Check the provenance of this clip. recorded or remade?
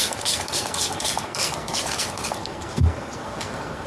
remade